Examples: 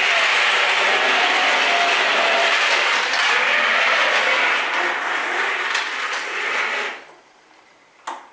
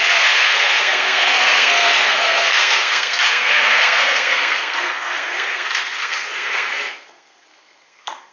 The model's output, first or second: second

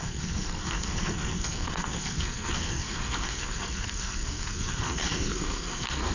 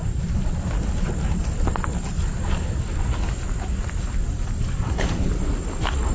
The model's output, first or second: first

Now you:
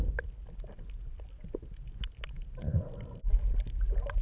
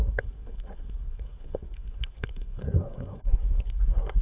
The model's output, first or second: second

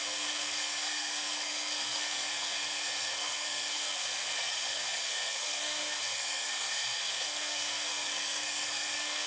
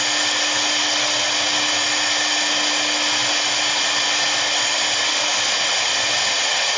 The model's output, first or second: first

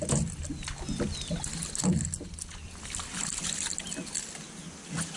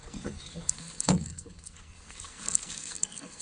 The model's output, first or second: second